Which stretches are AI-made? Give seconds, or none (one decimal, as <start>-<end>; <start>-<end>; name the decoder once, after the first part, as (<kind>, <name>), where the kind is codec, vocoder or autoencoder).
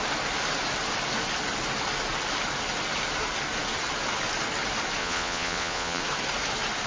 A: 5.0-6.0 (vocoder, Vocos)